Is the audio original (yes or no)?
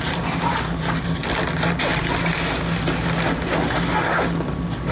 yes